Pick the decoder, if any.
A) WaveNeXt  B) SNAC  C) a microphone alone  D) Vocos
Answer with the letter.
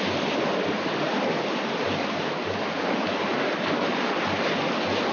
C